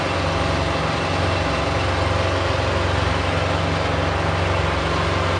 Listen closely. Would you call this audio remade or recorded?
recorded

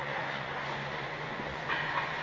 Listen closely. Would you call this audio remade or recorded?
remade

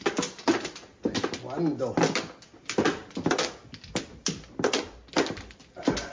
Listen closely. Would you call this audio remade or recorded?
recorded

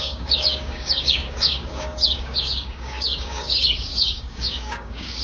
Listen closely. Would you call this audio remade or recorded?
remade